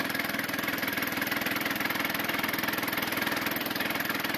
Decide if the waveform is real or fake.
fake